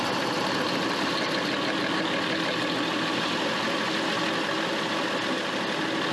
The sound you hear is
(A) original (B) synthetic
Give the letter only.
A